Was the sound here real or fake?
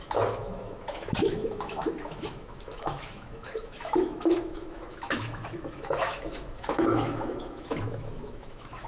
fake